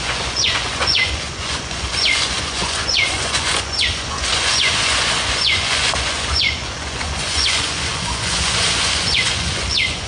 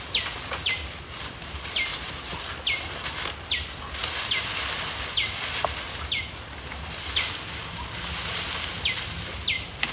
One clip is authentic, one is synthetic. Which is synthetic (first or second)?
first